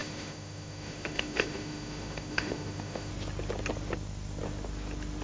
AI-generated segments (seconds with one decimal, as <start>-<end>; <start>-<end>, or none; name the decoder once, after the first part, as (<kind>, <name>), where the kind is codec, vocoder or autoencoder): 0.0-3.1 (autoencoder, DAC-VAE)